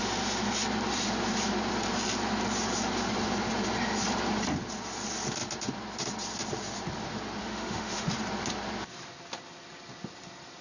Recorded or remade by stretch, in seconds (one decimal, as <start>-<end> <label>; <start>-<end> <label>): 0.0-7.4 recorded; 7.4-8.1 remade; 8.1-10.6 recorded